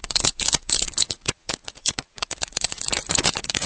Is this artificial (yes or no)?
yes